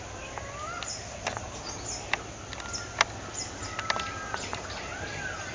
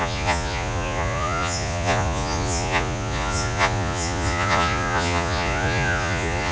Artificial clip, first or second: second